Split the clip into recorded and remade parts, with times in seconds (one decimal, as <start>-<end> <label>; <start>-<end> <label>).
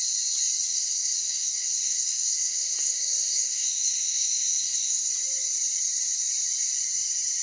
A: 0.0-0.7 recorded; 0.7-5.1 remade; 5.1-7.4 recorded